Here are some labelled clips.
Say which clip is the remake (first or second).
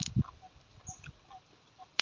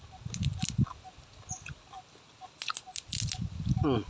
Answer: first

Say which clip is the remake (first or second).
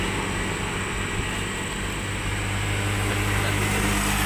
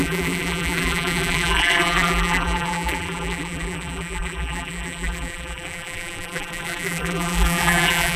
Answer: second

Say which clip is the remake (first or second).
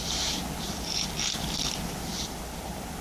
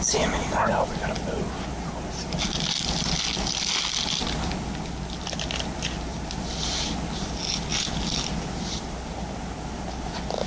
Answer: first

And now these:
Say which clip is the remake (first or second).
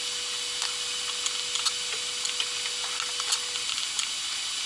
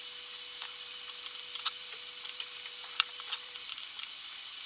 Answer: second